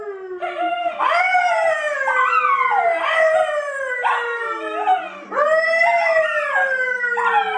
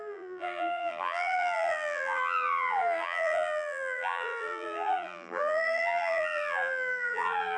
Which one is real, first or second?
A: first